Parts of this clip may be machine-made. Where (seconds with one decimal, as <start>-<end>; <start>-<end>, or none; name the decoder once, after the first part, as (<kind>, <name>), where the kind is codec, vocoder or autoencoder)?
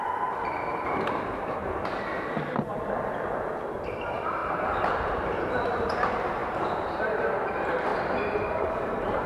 0.0-1.6 (vocoder, BigVGAN v2); 3.7-7.9; 8.7-9.3